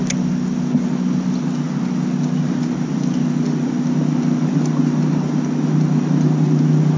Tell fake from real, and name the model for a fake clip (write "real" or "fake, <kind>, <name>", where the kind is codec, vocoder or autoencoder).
real